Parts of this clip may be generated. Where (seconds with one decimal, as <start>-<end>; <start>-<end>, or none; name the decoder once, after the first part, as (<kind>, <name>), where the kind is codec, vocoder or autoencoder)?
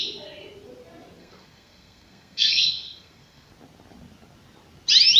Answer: 1.2-3.5 (codec, SNAC)